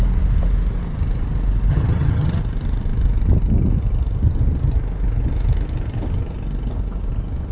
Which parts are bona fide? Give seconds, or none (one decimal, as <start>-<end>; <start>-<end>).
0.0-1.7; 2.4-7.5